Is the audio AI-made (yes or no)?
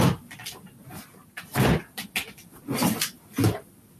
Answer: no